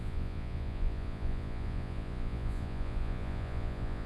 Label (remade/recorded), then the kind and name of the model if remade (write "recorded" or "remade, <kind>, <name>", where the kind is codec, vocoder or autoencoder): remade, vocoder, Vocos